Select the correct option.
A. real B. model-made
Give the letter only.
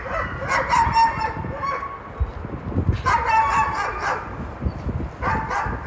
A